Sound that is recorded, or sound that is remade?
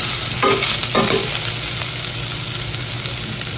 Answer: recorded